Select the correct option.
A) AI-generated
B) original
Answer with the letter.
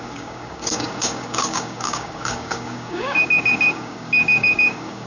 A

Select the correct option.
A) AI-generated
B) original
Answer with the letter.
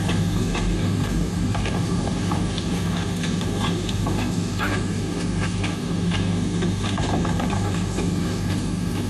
A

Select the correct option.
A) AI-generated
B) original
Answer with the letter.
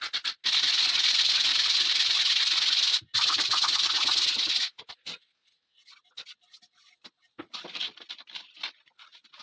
B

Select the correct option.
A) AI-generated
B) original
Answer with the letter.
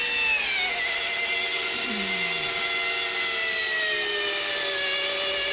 B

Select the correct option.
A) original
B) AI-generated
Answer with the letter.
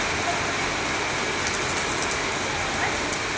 A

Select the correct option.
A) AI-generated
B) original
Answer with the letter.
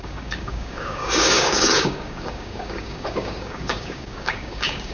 A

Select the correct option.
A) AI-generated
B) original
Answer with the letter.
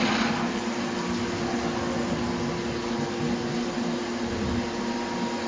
B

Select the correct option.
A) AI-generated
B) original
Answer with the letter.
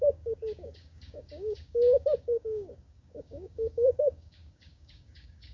A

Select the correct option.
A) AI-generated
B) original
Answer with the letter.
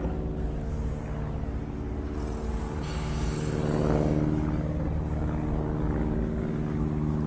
B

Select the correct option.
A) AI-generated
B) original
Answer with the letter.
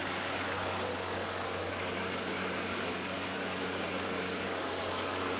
A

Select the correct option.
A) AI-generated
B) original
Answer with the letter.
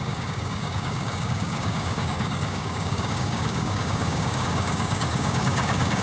A